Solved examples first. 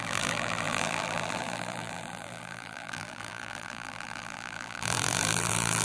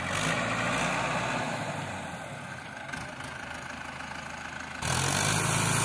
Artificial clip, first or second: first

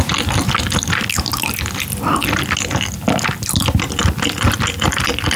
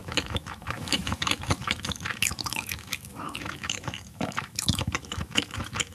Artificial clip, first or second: second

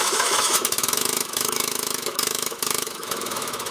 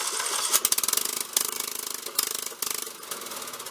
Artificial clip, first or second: first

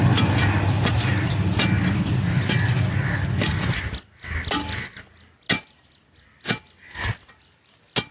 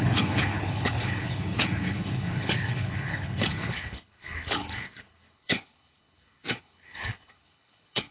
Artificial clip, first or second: second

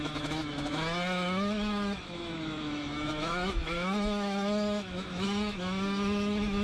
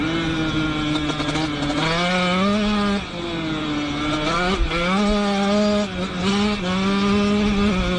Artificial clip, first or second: first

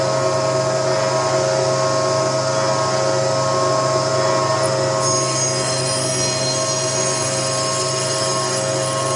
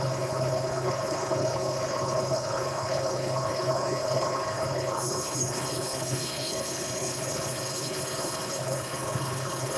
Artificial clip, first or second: second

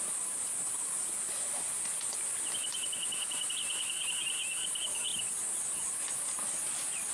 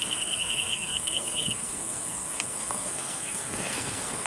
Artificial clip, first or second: second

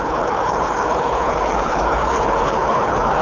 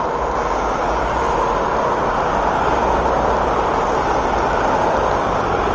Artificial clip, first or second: first